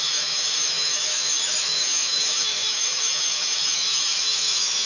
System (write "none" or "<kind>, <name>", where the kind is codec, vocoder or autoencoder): autoencoder, DAC-VAE